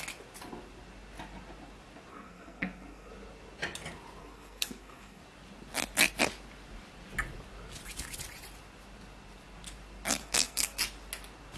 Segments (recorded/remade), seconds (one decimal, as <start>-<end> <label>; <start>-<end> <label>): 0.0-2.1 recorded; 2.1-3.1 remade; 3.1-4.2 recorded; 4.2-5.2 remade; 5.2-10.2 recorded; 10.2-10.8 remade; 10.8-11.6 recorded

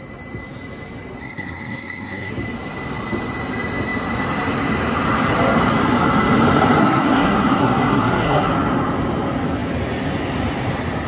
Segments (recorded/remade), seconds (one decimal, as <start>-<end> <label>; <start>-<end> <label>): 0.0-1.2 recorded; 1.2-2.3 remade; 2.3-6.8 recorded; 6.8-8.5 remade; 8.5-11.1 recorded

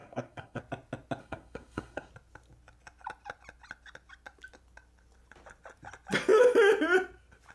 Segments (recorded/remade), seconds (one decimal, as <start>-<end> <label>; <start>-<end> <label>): 0.0-0.6 remade; 0.6-1.2 recorded; 1.2-2.1 remade; 2.1-7.5 recorded

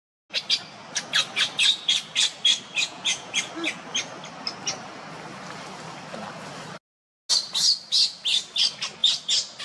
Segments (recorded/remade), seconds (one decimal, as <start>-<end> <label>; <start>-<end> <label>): 0.0-2.8 recorded; 2.8-3.5 remade; 3.5-9.6 recorded